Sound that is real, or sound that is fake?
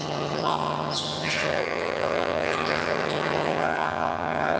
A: fake